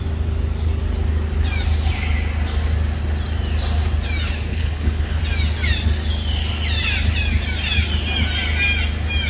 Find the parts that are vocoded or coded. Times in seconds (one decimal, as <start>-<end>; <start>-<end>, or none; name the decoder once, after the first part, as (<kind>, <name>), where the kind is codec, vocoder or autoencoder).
4.5-5.2 (codec, HILCodec)